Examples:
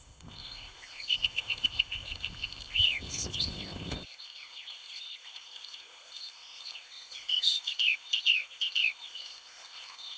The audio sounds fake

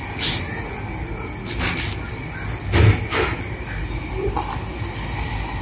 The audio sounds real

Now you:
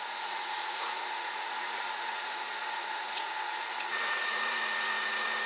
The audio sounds fake